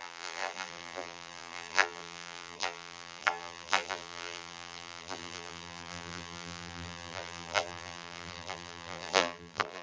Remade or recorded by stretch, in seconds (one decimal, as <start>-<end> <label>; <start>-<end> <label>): 0.0-9.8 remade